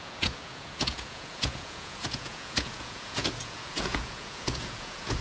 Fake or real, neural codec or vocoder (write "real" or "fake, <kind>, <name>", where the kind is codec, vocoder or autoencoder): fake, vocoder, Vocos